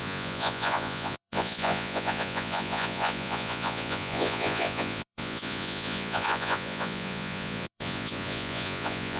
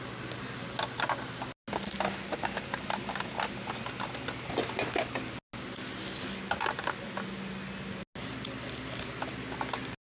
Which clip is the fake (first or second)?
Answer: first